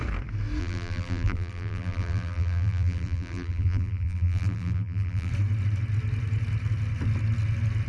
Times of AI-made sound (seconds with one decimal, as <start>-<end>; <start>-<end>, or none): 0.6-5.3